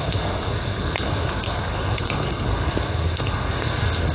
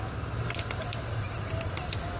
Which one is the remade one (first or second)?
first